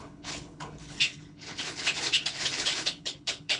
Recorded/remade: remade